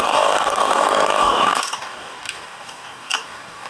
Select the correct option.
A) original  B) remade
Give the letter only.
B